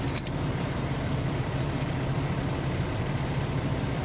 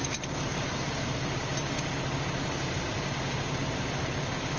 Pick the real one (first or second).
second